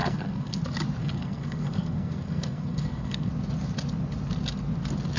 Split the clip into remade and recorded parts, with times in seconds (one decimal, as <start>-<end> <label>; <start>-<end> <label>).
0.0-0.6 remade; 0.6-1.0 recorded; 1.0-3.3 remade; 3.3-5.2 recorded